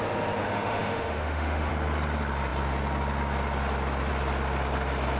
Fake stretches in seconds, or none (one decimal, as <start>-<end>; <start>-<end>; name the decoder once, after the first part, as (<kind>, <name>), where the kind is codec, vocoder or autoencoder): 0.4-1.7 (autoencoder, DAC-VAE)